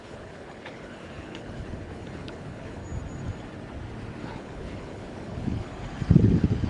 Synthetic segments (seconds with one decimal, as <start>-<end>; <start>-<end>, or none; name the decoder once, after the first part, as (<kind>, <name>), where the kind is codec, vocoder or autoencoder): 0.0-2.8 (codec, HILCodec); 4.2-6.7